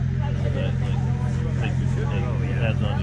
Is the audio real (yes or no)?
yes